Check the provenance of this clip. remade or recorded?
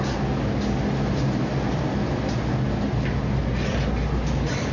recorded